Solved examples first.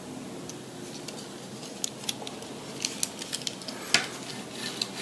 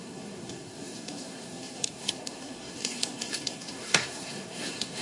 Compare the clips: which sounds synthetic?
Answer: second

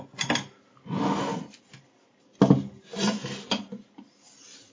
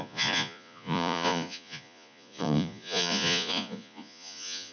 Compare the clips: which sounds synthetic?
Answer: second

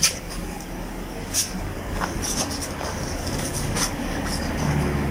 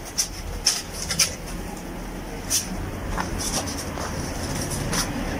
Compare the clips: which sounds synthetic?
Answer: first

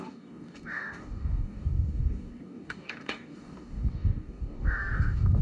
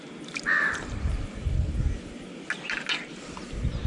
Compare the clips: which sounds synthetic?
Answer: first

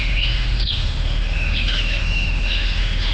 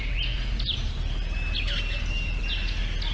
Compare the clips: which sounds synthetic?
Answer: first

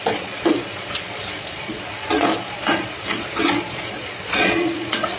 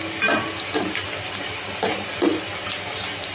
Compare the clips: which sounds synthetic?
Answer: first